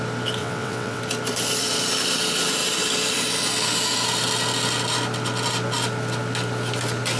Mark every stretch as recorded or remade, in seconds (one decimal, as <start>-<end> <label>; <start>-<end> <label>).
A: 0.0-0.4 recorded; 0.4-1.0 remade; 1.0-7.2 recorded